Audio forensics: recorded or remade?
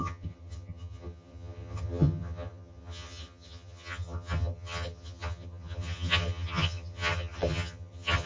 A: remade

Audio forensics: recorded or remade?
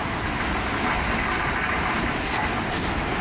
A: recorded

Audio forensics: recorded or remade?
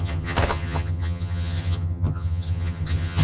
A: remade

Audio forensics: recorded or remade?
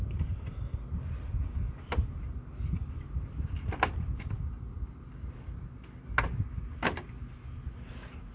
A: recorded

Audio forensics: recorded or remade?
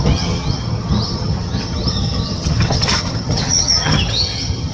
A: remade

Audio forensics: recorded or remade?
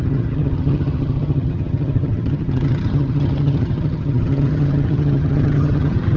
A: remade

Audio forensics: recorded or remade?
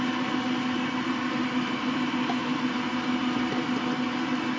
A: recorded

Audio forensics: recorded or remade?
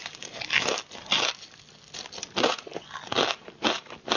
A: recorded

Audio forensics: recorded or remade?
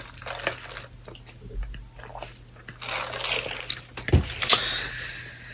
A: recorded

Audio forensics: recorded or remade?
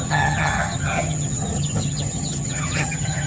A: remade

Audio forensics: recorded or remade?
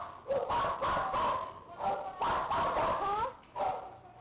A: recorded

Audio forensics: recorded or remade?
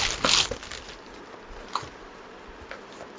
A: recorded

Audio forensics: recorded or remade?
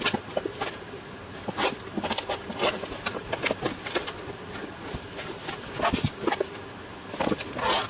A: recorded